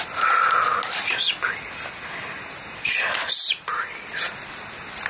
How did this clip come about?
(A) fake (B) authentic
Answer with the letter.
B